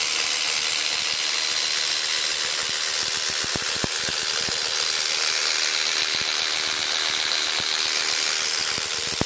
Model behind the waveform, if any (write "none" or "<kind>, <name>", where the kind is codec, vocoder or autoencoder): none